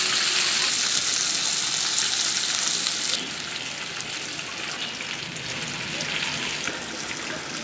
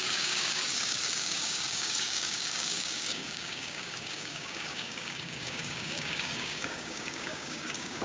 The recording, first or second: first